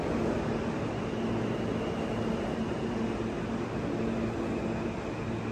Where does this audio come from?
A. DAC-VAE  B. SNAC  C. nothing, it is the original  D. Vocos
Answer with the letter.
C